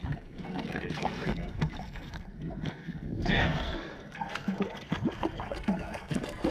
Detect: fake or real fake